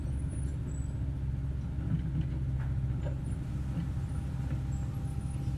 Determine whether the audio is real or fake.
real